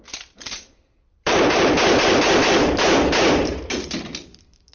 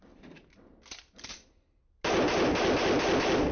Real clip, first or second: second